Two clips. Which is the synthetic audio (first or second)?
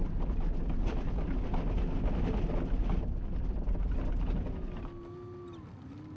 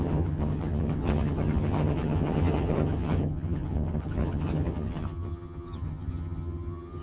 second